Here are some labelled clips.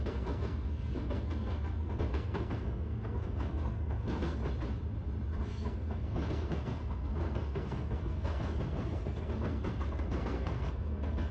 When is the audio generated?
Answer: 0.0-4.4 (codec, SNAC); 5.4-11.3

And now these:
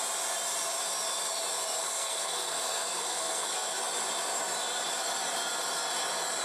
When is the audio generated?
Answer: 1.8-3.8 (codec, SNAC)

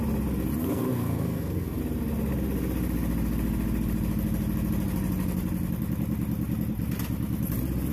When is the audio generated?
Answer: 0.6-1.8 (codec, SNAC)

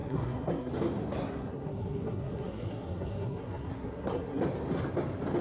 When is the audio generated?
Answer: 0.0-0.7 (codec, SNAC); 1.2-4.4

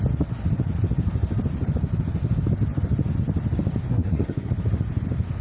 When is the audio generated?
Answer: 3.9-4.5 (codec, SNAC)